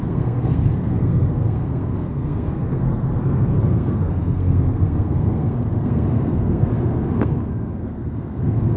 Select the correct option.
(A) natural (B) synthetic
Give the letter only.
B